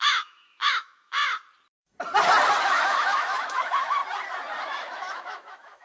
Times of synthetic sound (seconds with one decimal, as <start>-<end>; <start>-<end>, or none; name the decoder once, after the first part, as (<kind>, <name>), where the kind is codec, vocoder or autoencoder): 0.0-1.2 (autoencoder, DAC-VAE); 2.6-4.0; 4.6-5.8